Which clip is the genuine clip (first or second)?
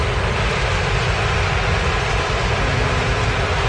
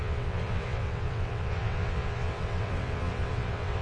first